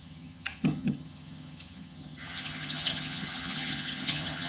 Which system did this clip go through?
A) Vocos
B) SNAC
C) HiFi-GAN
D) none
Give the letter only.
C